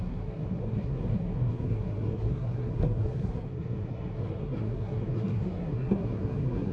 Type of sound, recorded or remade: remade